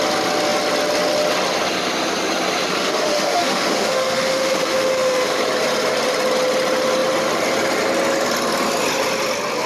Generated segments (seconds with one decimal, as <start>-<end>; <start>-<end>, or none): 2.7-5.4